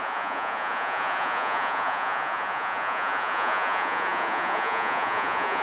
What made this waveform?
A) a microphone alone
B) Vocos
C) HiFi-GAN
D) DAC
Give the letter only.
B